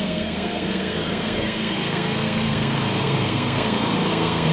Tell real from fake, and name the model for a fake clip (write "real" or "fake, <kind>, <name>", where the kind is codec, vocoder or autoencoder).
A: fake, codec, SNAC